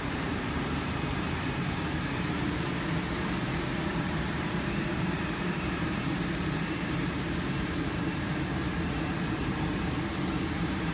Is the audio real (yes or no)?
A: no